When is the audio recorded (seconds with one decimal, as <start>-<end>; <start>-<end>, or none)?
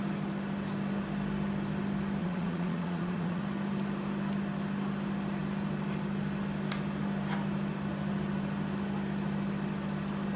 0.0-2.2; 3.4-10.4